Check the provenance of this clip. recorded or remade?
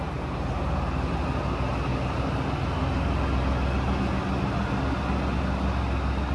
recorded